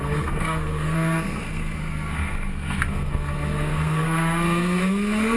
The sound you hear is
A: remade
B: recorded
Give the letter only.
A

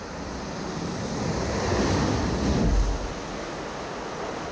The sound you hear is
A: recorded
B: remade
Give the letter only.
A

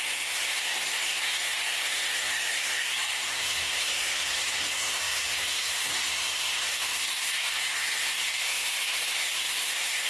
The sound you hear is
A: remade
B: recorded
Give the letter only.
A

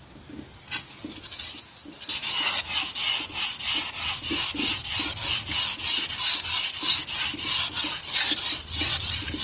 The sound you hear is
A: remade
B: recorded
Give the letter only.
B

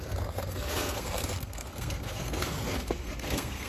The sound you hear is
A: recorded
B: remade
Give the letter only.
B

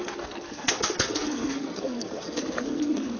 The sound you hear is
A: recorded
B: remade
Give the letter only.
B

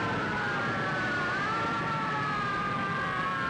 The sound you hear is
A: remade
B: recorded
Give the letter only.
B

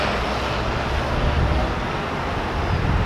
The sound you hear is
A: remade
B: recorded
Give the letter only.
B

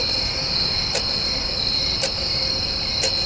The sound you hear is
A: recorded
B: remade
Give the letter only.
A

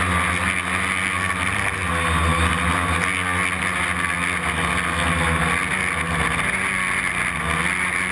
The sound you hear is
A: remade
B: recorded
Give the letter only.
B